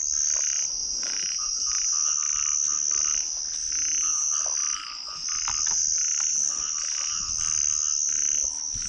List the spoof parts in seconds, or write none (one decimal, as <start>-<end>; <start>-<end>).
0.8-1.9